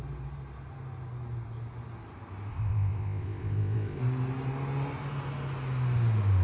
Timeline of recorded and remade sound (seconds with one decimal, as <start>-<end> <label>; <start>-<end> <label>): 0.0-2.5 recorded; 2.5-4.0 remade; 4.0-6.4 recorded